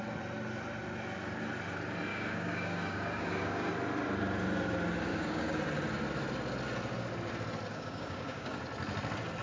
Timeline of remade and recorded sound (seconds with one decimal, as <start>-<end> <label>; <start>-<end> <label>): 0.0-2.1 recorded; 2.1-3.7 remade; 3.7-5.1 recorded; 5.1-5.6 remade; 5.6-7.7 recorded; 7.7-8.6 remade; 8.6-9.4 recorded